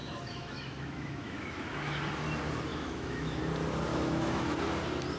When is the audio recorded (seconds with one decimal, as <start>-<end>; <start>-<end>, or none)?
2.0-2.7; 3.4-3.9; 4.6-5.2